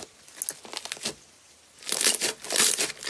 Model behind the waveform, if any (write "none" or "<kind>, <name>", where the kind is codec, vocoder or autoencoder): none